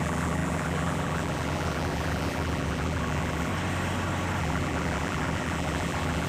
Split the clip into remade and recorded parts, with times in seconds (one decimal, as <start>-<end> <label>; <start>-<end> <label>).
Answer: 0.0-3.5 remade; 3.5-4.4 recorded; 4.4-6.3 remade